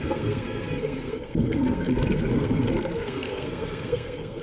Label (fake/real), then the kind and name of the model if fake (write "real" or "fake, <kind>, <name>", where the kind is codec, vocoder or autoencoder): fake, codec, SNAC